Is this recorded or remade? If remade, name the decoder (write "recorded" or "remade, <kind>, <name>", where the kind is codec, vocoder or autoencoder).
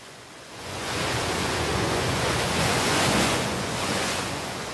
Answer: remade, vocoder, Vocos